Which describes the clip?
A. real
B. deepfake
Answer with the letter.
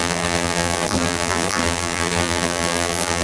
B